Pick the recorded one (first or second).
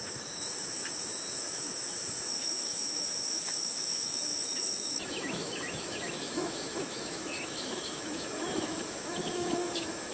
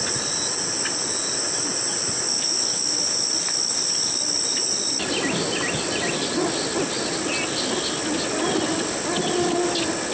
second